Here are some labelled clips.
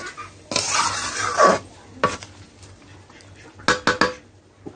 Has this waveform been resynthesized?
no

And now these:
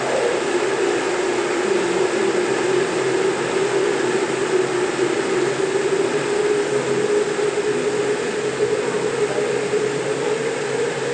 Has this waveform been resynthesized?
no